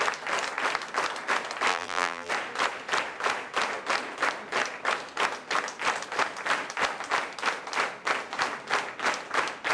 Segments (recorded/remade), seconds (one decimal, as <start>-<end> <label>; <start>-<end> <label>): 0.0-1.7 recorded; 1.7-2.3 remade; 2.3-9.7 recorded